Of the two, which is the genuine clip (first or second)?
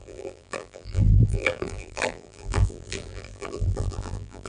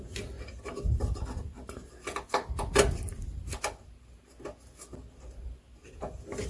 second